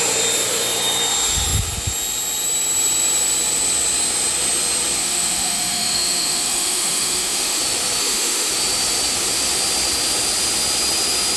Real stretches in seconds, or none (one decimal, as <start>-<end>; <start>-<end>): 0.0-5.0; 7.6-8.0; 8.5-11.4